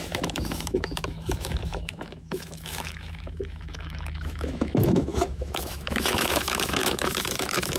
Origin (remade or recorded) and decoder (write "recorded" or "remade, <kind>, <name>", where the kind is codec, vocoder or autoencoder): remade, autoencoder, DAC-VAE